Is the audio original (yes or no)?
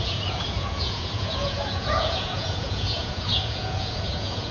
no